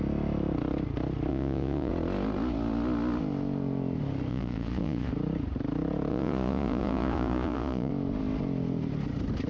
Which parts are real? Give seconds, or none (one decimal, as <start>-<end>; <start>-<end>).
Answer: 0.0-1.3; 1.9-4.3; 5.1-6.1; 7.9-9.5